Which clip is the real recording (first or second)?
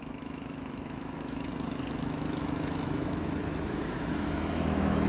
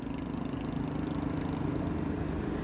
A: second